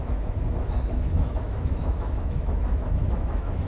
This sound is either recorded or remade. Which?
remade